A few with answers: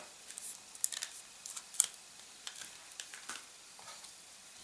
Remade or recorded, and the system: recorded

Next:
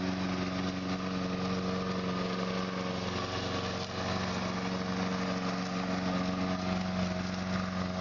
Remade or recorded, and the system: recorded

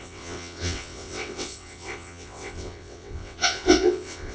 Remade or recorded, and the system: remade, vocoder, WaveNeXt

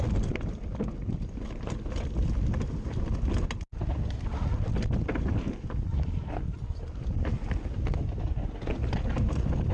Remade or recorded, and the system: recorded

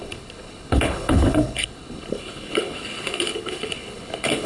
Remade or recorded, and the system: remade, codec, HILCodec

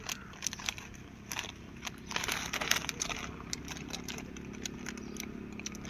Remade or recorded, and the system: recorded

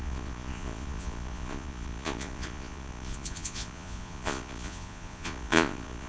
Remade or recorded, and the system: remade, vocoder, Vocos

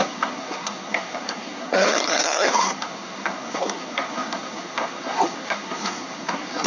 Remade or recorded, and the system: remade, codec, SNAC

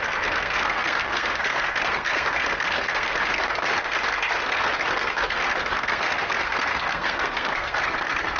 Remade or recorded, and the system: remade, codec, SNAC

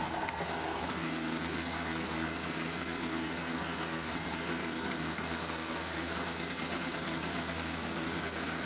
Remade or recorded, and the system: remade, codec, SNAC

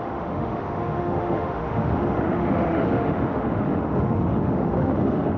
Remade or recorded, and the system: remade, autoencoder, DAC-VAE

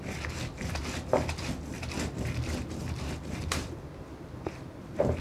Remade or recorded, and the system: recorded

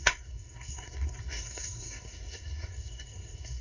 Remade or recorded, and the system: remade, codec, SNAC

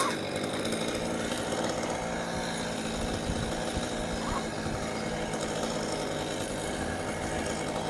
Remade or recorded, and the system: recorded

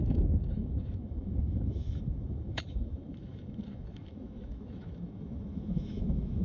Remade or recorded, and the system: remade, autoencoder, DAC-VAE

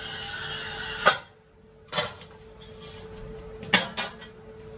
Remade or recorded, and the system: recorded